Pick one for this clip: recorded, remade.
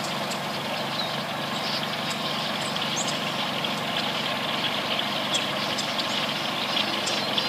recorded